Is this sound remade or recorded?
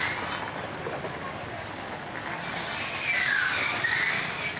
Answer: recorded